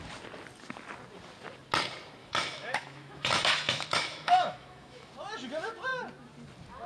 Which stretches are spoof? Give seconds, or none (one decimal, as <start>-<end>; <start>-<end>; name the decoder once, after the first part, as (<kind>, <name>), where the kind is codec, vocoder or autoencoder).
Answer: 2.2-5.1 (autoencoder, DAC-VAE)